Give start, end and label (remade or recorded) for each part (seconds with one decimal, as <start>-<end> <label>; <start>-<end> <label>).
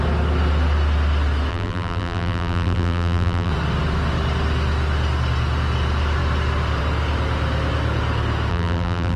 0.0-1.5 recorded; 1.5-3.5 remade; 3.5-8.5 recorded; 8.5-9.2 remade